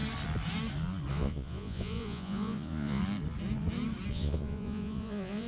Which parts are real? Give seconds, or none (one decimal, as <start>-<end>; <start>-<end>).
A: 0.0-1.1; 3.0-4.1